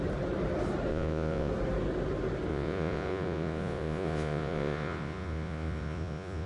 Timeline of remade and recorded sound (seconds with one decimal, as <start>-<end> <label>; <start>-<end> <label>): 0.0-0.9 recorded; 0.9-1.5 remade; 1.5-2.5 recorded; 2.5-6.5 remade